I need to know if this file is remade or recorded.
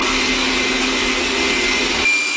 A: recorded